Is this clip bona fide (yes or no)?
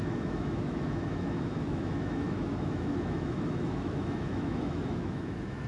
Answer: no